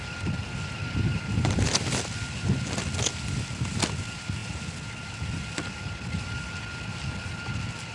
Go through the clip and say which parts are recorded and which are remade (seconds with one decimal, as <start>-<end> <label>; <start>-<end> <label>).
0.0-7.9 recorded